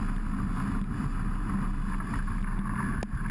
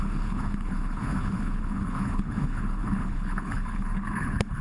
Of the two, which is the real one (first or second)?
first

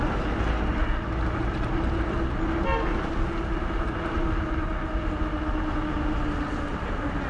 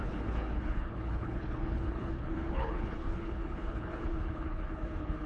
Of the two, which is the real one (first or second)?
first